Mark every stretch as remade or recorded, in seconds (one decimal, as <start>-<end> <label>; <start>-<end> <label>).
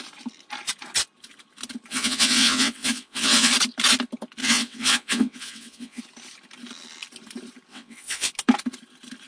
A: 0.0-1.9 recorded; 1.9-3.5 remade; 3.5-4.4 recorded; 4.4-6.0 remade; 6.0-7.7 recorded; 7.7-8.3 remade; 8.3-9.3 recorded